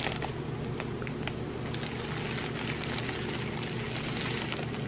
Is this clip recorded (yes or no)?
yes